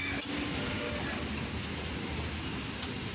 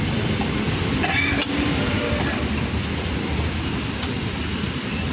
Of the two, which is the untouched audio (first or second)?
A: first